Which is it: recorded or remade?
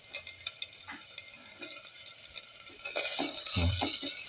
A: recorded